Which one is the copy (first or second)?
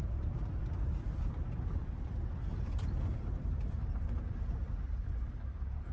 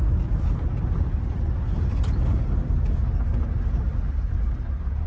first